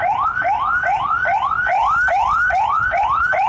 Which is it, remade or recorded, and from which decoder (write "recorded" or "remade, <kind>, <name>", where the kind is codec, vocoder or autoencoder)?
recorded